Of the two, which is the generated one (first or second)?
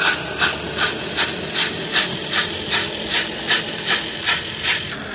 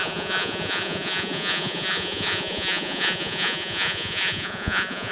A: second